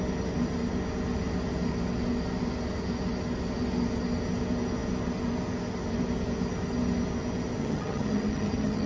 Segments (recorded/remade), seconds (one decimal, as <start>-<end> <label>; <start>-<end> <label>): 0.0-7.6 recorded; 7.6-8.9 remade